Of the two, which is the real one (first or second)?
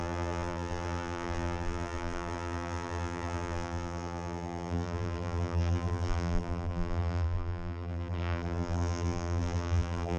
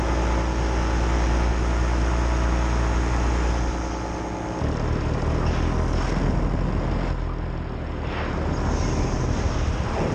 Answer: second